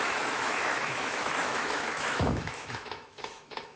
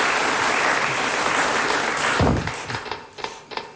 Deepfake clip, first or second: first